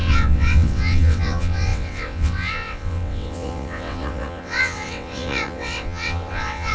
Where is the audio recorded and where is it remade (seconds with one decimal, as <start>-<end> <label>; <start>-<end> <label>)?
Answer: 0.0-6.7 remade